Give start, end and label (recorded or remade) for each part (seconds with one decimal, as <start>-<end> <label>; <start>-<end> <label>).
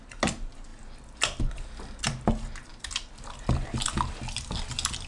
0.0-5.1 recorded